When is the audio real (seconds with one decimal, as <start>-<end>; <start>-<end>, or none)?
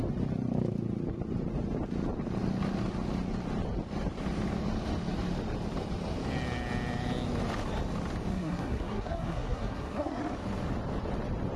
0.0-8.3; 10.2-11.6